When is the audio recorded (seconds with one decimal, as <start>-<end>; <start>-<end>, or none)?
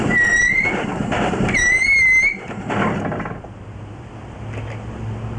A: 0.0-0.9; 2.6-5.4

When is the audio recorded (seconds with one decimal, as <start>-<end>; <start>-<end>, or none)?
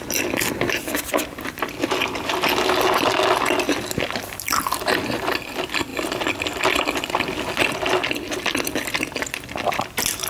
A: 0.0-10.3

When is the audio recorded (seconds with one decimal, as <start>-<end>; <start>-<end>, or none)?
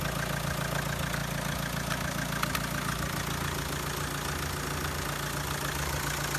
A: 0.0-6.4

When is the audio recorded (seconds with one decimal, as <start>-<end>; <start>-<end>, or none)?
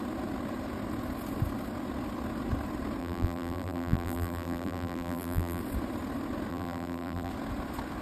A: 0.0-3.0; 5.6-6.5; 7.3-8.0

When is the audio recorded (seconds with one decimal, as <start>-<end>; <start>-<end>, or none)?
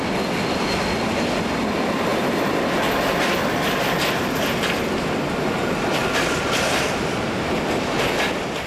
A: 0.0-8.7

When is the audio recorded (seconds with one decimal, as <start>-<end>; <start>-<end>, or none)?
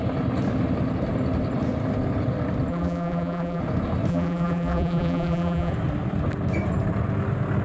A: 0.0-2.7; 3.6-4.1; 5.7-7.6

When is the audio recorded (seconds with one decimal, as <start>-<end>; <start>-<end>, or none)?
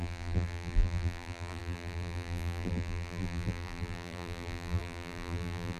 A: none